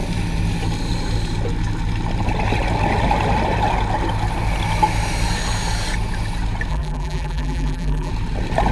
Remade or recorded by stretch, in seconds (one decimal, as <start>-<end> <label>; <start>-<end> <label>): 0.0-6.7 recorded; 6.7-8.1 remade; 8.1-8.7 recorded